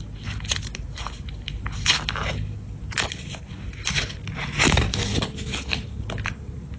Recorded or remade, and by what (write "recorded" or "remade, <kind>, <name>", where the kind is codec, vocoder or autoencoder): recorded